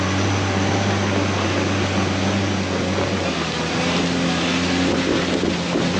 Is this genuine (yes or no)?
yes